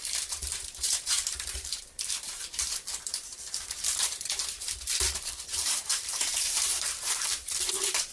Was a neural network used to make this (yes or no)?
yes